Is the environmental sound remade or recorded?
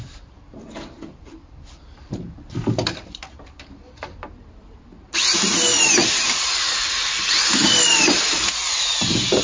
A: remade